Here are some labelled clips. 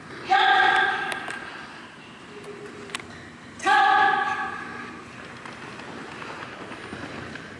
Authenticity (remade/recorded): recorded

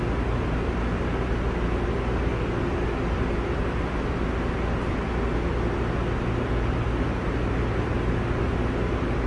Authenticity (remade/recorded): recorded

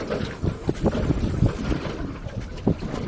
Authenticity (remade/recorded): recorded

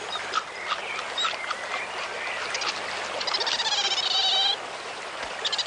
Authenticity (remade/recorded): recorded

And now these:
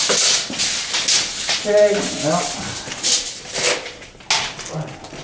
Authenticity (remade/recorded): recorded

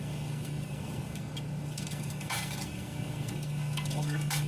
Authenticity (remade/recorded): remade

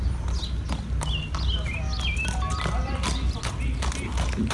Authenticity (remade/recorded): recorded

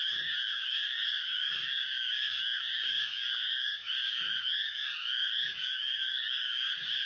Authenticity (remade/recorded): remade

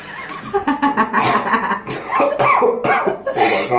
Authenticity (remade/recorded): recorded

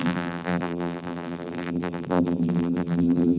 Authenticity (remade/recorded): remade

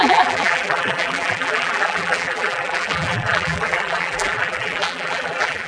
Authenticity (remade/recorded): remade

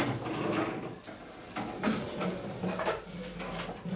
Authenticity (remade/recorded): recorded